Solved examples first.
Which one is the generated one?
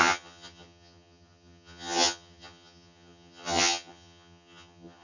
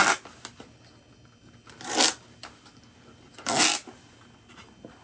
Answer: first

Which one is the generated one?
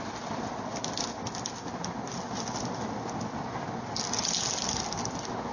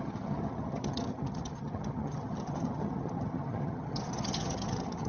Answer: second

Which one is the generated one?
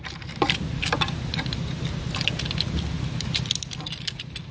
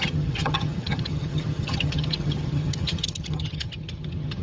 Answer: second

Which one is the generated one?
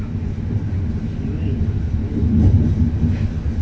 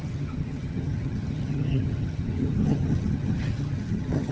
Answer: second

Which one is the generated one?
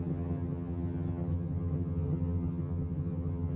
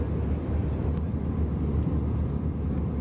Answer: first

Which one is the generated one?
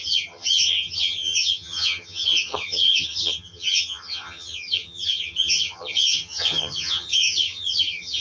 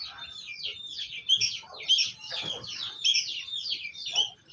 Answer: first